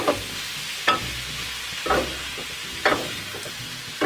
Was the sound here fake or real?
real